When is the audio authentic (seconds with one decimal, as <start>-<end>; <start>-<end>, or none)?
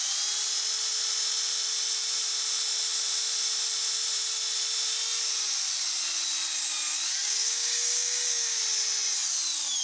0.0-7.2; 8.6-9.8